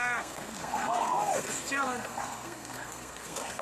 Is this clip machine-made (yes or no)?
yes